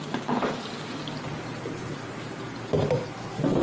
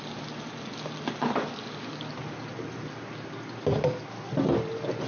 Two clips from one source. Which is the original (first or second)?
second